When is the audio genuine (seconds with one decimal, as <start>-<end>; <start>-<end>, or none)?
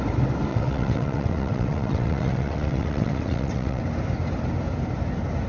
0.0-0.5; 3.8-5.5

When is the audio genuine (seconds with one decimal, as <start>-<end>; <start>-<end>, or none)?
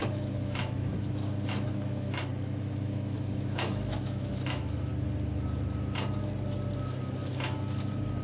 4.9-8.2